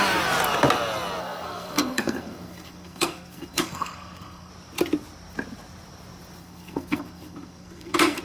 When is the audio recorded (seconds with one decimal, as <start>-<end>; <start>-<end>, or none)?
0.0-1.2; 4.5-6.4